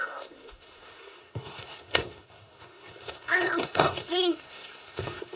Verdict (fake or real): fake